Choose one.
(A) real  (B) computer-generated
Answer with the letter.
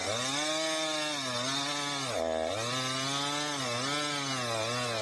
A